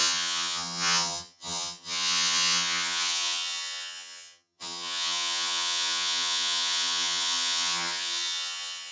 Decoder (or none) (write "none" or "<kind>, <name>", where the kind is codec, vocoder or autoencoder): vocoder, HiFi-GAN